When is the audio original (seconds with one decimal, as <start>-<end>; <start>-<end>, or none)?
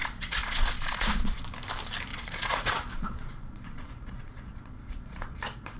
1.4-2.1